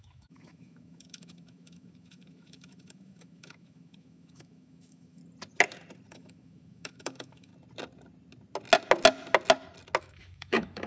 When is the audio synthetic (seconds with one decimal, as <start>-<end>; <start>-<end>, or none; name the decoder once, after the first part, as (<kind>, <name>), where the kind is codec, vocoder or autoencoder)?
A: 0.0-5.2 (autoencoder, DAC-VAE); 6.1-7.5; 10.0-10.9